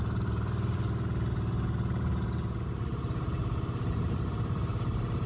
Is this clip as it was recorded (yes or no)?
no